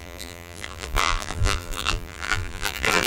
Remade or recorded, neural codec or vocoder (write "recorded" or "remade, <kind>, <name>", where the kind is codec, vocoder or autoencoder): remade, vocoder, BigVGAN v2